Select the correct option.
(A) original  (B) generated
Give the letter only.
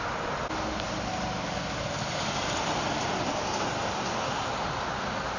A